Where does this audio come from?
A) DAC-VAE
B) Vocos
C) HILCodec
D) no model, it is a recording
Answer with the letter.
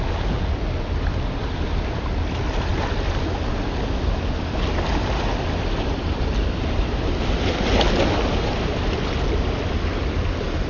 D